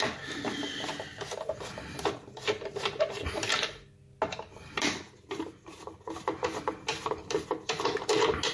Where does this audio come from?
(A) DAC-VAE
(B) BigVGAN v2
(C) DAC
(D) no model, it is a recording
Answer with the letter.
D